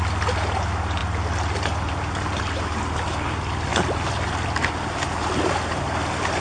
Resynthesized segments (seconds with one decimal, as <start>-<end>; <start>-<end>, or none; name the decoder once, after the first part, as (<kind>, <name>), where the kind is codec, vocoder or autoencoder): none